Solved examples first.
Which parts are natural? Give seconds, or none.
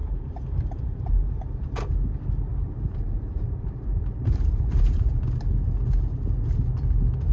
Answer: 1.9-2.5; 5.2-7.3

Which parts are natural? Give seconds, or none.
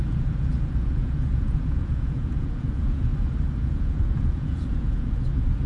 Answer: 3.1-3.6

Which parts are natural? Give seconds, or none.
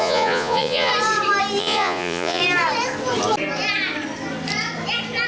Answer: 0.9-1.6; 2.4-5.3